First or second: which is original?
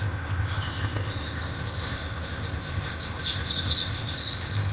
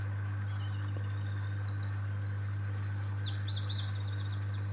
second